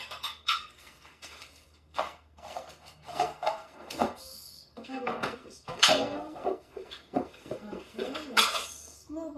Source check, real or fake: fake